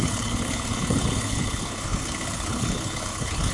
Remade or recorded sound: remade